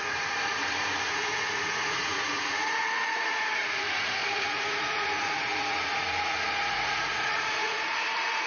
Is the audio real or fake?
fake